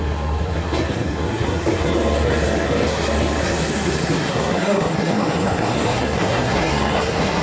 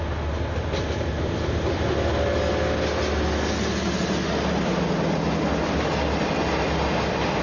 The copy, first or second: first